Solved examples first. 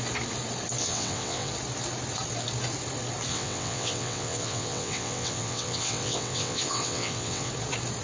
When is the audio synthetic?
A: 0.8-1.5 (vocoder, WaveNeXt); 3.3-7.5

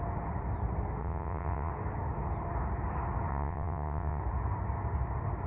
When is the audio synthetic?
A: 1.0-1.7 (vocoder, WaveNeXt); 3.3-4.2